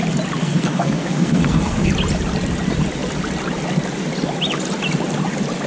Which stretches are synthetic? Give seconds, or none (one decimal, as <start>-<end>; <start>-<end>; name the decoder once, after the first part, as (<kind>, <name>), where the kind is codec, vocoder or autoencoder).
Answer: 0.4-1.9 (codec, SNAC)